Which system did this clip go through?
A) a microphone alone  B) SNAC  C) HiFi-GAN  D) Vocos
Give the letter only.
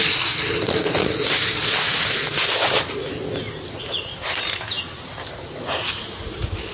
A